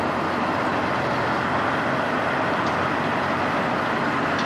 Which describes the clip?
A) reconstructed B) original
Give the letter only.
B